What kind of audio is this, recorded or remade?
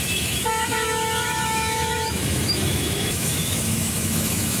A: remade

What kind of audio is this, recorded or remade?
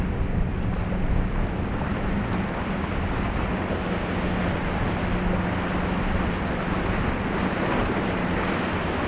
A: recorded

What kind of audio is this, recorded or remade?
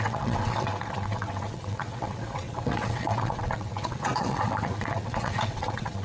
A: remade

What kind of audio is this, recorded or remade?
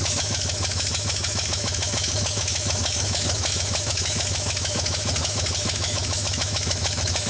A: remade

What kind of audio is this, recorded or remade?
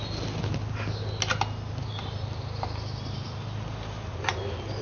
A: recorded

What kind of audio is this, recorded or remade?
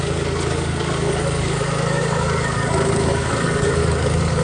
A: remade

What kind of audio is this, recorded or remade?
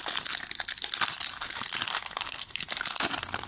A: recorded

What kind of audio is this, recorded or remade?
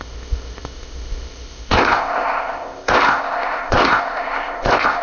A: remade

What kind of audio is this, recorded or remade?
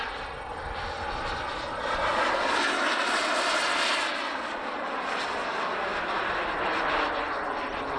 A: recorded